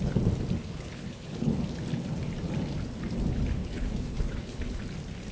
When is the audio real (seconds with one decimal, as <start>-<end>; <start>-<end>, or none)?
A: 0.0-0.6; 1.6-3.6; 4.8-5.3